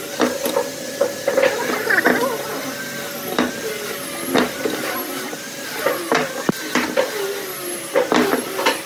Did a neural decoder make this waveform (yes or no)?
no